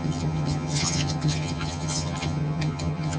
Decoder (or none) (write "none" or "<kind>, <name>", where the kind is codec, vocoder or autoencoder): vocoder, HiFi-GAN